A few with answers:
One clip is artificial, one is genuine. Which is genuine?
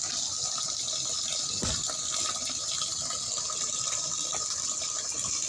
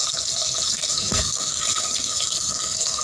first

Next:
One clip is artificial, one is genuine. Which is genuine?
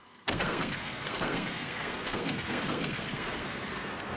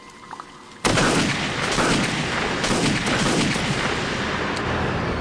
second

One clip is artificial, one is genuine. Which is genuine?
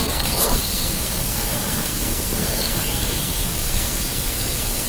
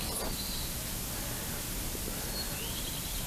second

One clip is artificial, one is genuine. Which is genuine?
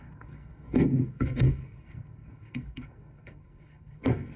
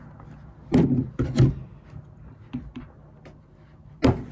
second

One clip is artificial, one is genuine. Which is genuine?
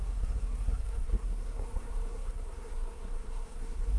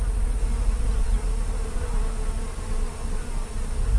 second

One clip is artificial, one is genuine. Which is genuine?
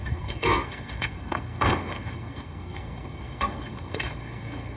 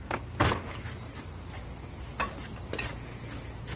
second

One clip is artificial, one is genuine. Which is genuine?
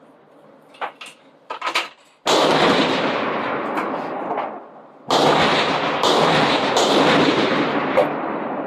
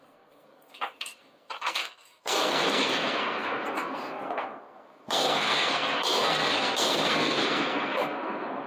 first